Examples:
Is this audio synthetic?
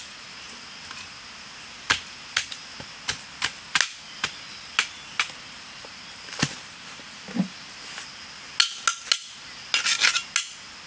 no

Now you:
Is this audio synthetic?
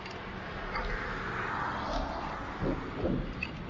no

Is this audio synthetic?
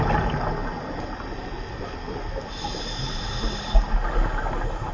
no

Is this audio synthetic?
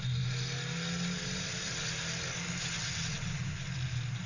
no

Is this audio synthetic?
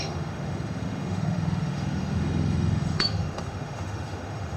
yes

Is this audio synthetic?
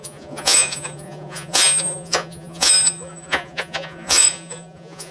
yes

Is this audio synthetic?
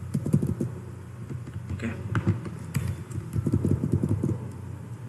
no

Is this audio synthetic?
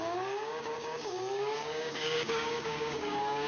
yes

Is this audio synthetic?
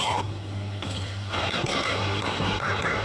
yes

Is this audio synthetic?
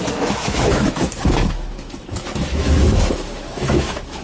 yes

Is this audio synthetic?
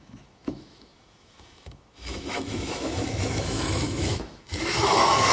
yes